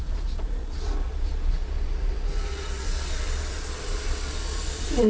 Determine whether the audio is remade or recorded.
remade